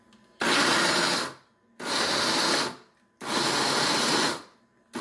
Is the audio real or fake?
real